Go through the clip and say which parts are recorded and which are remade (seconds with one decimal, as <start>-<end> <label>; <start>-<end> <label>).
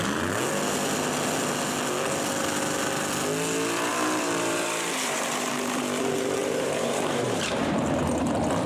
0.0-3.9 recorded; 3.9-5.5 remade; 5.5-6.4 recorded; 6.4-7.8 remade; 7.8-8.7 recorded